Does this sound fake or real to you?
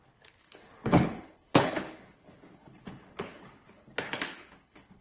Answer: fake